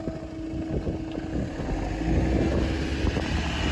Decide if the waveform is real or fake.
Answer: real